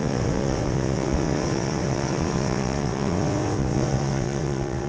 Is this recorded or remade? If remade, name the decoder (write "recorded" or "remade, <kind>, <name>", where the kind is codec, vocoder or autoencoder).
remade, vocoder, WaveNeXt